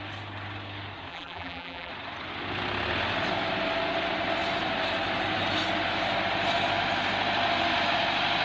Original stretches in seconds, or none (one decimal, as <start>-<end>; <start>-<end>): 0.0-1.1; 1.9-8.4